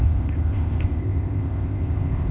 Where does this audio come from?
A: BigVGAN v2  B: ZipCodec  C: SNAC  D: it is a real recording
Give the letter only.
B